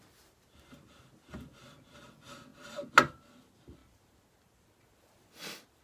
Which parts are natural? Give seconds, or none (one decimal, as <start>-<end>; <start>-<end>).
0.0-5.8